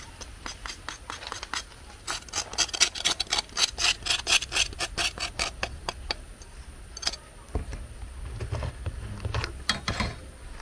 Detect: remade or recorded recorded